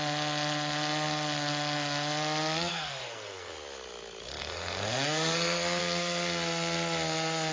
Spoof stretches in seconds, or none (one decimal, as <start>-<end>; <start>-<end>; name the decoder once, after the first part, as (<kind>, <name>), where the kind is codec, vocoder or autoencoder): 2.7-3.5 (codec, SNAC); 4.4-5.8